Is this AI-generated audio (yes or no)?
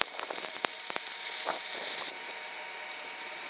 yes